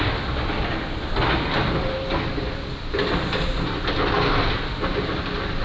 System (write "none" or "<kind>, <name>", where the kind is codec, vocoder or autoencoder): none